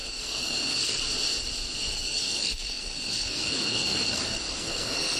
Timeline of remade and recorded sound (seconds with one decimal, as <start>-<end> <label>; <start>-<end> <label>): 0.0-1.0 remade; 1.0-1.9 recorded; 1.9-5.2 remade